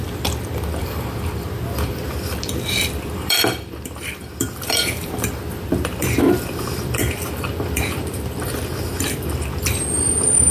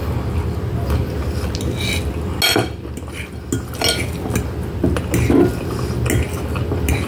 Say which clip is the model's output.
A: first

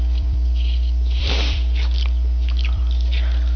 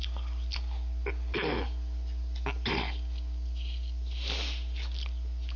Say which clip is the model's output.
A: first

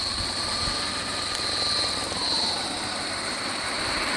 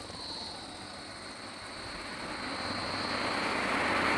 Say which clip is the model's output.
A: first